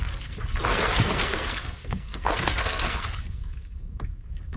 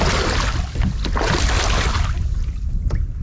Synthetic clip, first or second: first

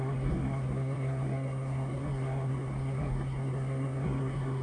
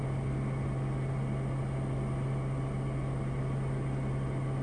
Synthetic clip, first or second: first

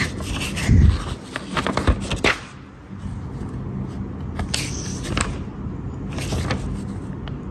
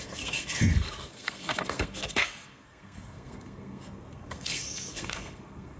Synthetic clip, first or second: second